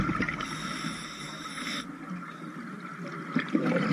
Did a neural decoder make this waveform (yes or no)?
no